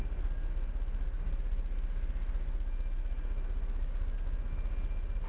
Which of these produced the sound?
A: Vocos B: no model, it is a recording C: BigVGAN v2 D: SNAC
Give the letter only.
B